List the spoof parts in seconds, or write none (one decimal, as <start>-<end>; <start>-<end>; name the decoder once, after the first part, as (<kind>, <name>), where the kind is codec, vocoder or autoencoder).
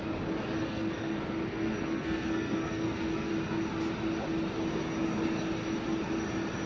0.6-3.3 (codec, SNAC)